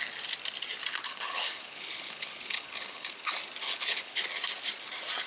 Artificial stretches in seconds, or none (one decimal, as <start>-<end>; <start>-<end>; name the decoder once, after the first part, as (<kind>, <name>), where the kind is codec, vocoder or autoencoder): 0.9-3.2 (codec, HILCodec); 3.6-4.2